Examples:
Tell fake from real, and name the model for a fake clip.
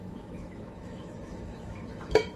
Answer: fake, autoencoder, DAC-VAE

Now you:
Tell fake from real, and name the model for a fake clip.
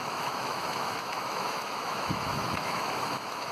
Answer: fake, autoencoder, DAC-VAE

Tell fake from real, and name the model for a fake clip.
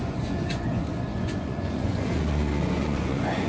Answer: fake, vocoder, Vocos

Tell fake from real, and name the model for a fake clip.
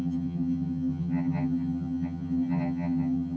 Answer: fake, vocoder, HiFi-GAN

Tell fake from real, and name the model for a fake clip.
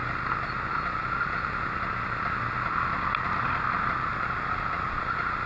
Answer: real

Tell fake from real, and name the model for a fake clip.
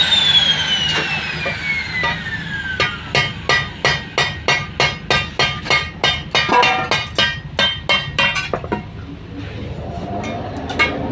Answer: real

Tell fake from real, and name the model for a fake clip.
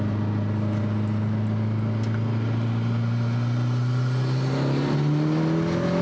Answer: real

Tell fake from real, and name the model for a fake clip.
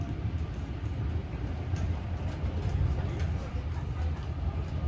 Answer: real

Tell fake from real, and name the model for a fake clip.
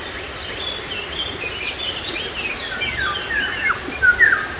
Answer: real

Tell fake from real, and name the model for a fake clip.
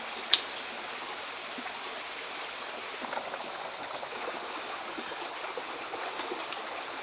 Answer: real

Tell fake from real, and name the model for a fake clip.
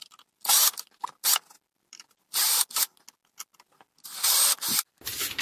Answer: real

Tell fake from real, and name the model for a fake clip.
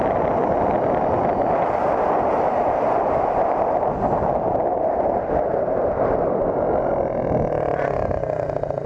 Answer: real